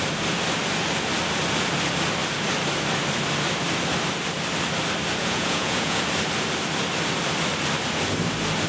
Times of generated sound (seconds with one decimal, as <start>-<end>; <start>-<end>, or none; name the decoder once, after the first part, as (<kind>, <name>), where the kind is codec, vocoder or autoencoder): 5.2-6.0 (vocoder, Vocos)